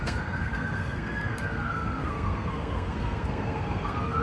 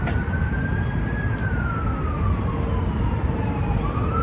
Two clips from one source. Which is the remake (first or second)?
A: first